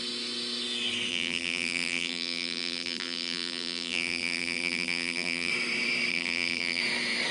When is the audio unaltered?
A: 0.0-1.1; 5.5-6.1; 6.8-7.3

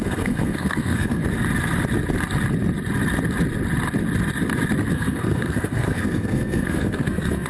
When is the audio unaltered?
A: 1.2-4.9